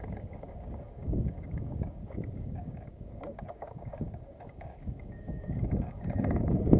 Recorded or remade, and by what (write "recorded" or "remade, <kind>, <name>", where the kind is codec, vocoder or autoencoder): remade, codec, DAC